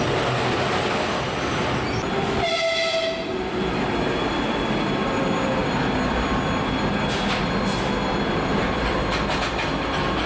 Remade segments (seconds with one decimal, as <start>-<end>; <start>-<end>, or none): 5.6-8.9